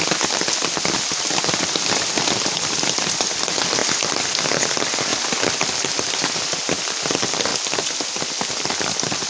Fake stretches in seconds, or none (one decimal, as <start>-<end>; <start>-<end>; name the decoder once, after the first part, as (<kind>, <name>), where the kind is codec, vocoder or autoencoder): none